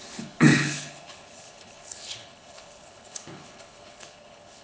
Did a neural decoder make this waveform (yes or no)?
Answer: yes